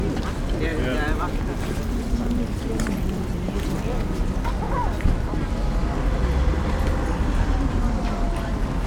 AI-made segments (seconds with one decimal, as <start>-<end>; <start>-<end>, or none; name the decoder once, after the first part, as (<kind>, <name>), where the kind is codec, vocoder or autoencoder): 0.7-4.5 (vocoder, BigVGAN v2)